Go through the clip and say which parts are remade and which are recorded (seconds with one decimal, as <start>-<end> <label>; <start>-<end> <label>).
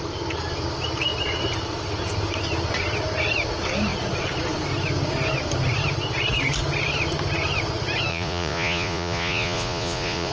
0.0-8.1 recorded; 8.1-10.3 remade